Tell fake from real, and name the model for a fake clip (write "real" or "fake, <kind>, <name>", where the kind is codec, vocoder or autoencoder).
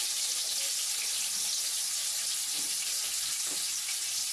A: fake, vocoder, BigVGAN v2